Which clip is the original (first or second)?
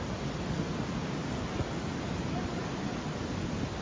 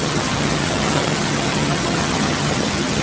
first